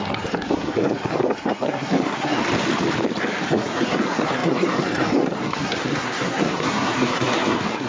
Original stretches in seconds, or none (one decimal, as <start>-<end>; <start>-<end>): 2.4-3.2